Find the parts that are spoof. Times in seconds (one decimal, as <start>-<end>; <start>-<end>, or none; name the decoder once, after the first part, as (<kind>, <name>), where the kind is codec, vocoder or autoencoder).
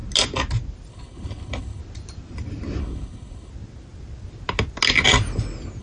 0.9-1.8 (codec, HILCodec); 2.8-3.5